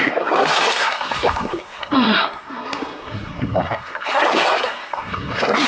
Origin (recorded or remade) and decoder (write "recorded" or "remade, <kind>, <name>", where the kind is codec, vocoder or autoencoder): remade, codec, SNAC